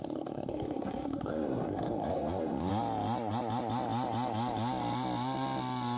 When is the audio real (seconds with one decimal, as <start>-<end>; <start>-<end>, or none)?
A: 2.7-6.0